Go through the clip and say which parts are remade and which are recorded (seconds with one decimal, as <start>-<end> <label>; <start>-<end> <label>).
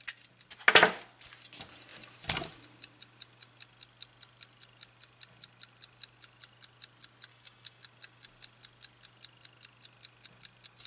0.0-7.3 recorded; 7.3-7.8 remade; 7.8-10.9 recorded